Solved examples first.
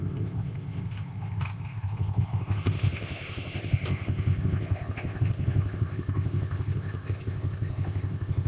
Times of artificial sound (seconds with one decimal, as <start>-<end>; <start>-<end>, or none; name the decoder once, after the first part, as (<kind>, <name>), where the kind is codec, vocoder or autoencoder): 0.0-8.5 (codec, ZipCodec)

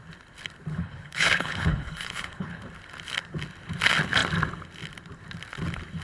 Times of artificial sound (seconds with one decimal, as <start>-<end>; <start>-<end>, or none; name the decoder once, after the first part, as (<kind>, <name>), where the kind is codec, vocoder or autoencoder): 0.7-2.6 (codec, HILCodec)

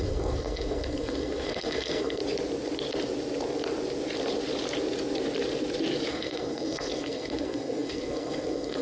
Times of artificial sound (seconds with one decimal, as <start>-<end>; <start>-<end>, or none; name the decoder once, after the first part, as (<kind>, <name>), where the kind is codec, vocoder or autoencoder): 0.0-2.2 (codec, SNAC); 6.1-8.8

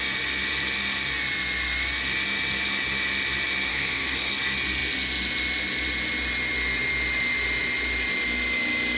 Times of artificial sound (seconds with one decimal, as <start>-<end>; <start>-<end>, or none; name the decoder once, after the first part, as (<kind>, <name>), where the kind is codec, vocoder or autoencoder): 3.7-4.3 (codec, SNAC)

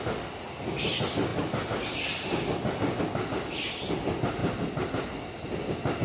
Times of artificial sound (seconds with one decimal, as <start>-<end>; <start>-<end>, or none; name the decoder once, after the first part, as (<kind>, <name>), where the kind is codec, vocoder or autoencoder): none

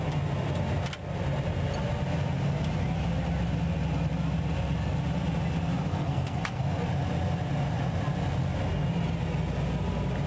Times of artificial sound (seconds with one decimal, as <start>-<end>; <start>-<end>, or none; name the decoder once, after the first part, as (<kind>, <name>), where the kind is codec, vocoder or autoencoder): 5.9-6.6 (codec, SNAC)

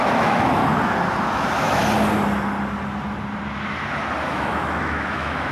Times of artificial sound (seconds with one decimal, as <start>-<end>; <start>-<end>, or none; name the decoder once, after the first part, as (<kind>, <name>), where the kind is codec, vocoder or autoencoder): 0.0-0.6 (autoencoder, DAC-VAE); 1.3-1.8; 4.3-5.5

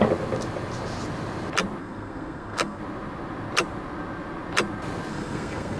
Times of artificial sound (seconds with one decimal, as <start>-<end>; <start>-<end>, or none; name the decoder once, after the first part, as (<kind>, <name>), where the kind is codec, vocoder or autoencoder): 1.8-2.8 (codec, SNAC); 5.1-5.8